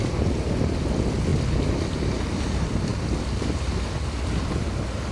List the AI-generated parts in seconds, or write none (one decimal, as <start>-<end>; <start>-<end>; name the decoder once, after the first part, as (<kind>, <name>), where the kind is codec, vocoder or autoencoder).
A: none